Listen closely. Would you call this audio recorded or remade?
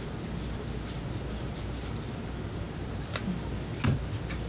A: recorded